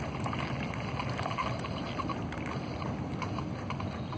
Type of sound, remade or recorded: recorded